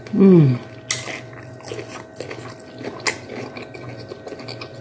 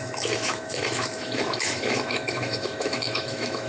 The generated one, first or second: second